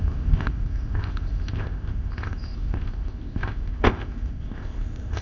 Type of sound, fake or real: fake